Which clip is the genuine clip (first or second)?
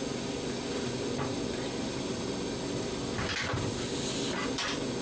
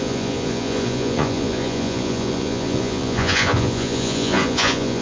first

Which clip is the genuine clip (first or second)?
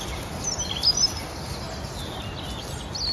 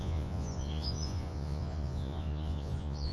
first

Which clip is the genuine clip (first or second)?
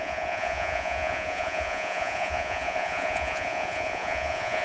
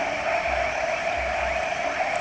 second